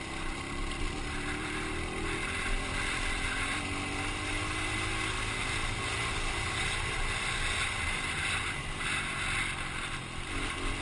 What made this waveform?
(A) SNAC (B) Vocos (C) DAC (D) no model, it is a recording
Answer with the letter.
D